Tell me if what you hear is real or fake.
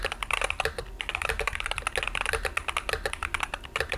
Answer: real